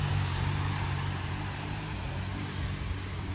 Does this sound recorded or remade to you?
recorded